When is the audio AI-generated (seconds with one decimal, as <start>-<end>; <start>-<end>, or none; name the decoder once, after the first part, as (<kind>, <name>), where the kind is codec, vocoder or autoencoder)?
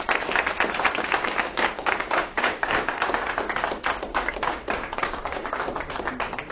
0.9-3.3 (codec, DAC); 4.1-5.6